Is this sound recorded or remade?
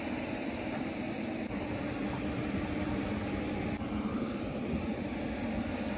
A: recorded